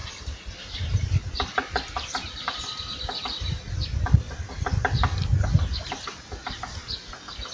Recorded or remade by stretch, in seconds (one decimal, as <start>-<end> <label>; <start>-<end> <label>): 0.0-7.5 recorded